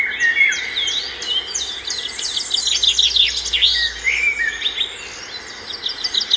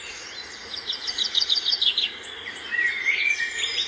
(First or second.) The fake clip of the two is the second